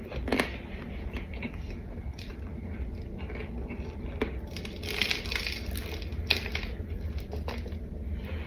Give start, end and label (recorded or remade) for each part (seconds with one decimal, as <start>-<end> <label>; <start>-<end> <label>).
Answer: 0.0-8.5 recorded